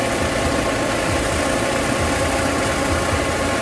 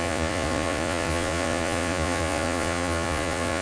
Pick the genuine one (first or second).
first